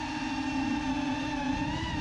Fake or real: real